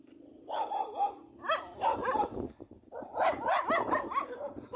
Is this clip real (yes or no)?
yes